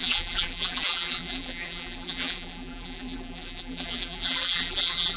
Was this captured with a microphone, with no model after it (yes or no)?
no